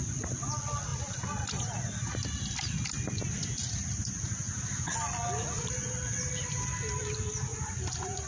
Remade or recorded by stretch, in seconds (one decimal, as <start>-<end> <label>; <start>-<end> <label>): 0.0-7.5 recorded; 7.5-8.3 remade